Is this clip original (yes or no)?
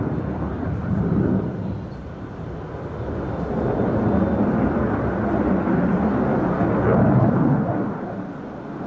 yes